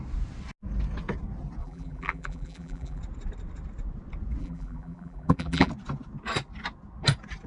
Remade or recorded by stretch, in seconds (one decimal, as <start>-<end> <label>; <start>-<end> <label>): 0.0-1.6 recorded; 1.6-3.0 remade; 3.0-4.4 recorded; 4.4-5.7 remade; 5.7-7.5 recorded